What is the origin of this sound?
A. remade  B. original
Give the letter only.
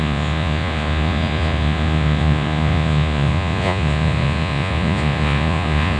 A